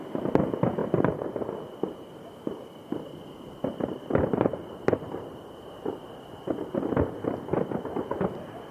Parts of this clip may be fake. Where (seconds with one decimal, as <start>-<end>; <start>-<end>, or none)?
none